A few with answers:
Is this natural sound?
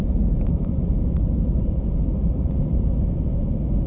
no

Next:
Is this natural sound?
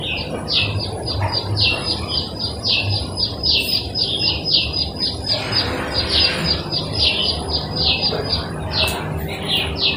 yes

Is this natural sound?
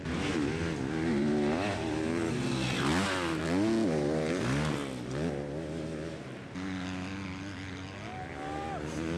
yes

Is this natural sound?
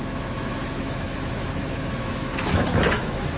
no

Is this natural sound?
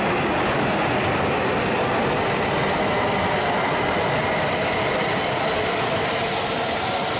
yes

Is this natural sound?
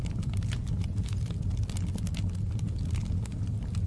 yes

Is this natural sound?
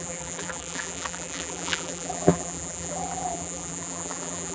no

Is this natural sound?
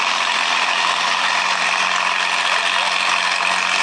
yes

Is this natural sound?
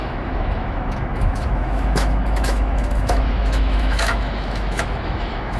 no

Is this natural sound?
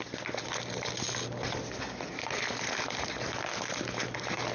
yes